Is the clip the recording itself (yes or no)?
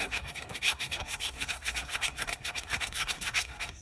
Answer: no